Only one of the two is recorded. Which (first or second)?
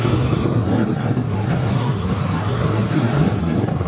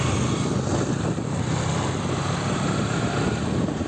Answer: second